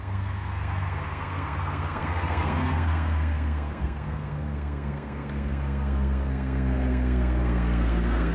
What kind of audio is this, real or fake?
fake